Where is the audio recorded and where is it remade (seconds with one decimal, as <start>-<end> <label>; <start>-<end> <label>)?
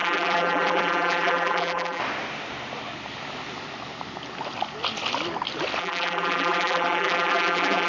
0.0-2.0 remade; 2.0-5.8 recorded; 5.8-7.9 remade